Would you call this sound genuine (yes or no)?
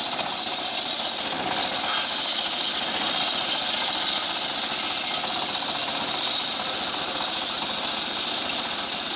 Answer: yes